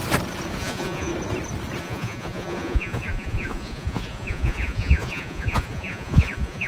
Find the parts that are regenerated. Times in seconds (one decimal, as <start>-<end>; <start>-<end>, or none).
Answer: 0.6-1.1; 1.8-6.7